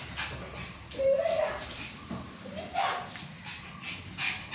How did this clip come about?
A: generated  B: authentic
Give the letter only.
B